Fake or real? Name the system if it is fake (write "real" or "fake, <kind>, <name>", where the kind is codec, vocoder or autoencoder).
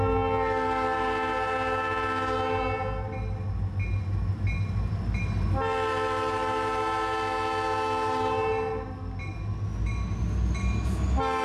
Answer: real